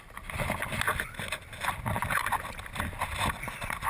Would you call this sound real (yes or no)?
yes